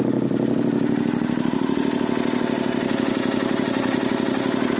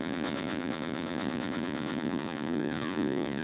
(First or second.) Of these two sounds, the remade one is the second